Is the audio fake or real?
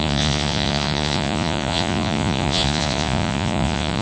fake